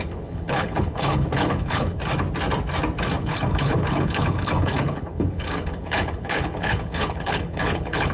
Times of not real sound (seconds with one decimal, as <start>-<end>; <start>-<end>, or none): 0.0-2.0; 3.2-8.1